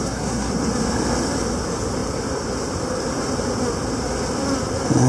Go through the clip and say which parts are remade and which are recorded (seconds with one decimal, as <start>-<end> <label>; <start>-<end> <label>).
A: 0.0-0.5 remade; 0.5-5.1 recorded